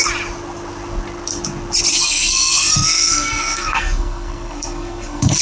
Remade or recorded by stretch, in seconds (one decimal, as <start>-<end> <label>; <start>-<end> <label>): 0.0-1.9 recorded; 1.9-5.4 remade